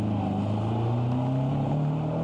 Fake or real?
real